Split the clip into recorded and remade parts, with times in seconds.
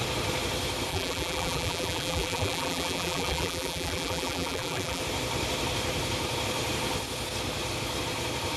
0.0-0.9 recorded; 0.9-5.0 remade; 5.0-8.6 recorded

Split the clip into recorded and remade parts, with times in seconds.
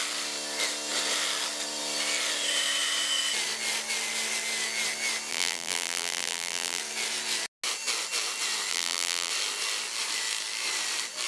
0.0-5.3 recorded; 5.3-6.8 remade; 6.8-8.7 recorded; 8.7-9.3 remade; 9.3-11.3 recorded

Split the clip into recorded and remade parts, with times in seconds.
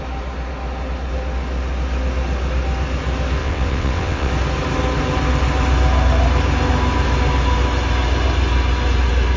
0.0-3.4 recorded; 3.4-4.3 remade; 4.3-9.4 recorded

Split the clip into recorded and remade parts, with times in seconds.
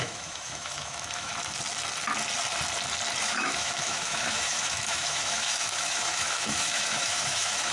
0.0-1.3 remade; 1.3-3.2 recorded; 3.2-7.7 remade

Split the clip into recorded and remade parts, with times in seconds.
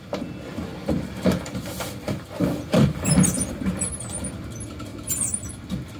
0.0-0.7 recorded; 0.7-4.3 remade; 4.3-6.0 recorded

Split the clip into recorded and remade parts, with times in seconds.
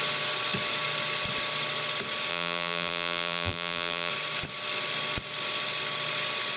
0.0-2.3 recorded; 2.3-4.1 remade; 4.1-6.6 recorded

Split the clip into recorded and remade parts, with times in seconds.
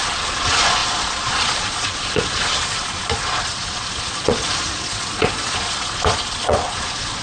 0.0-7.2 remade